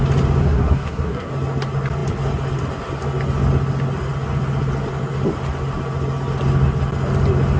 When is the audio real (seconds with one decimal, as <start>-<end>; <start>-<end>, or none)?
0.0-0.4; 1.3-7.6